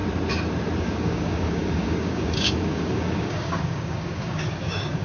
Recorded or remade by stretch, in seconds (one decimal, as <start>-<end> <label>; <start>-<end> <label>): 0.0-0.8 recorded; 0.8-5.0 remade